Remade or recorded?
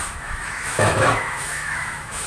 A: remade